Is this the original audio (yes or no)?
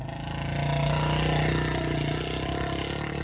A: yes